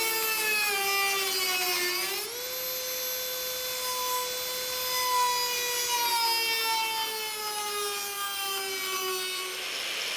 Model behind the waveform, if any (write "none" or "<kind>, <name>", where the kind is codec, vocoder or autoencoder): none